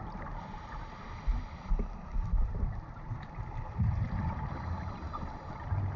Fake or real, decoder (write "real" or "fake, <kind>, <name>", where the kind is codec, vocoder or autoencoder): real